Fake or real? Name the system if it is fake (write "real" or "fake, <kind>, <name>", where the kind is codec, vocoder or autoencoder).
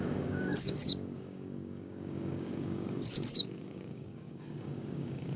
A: fake, codec, DAC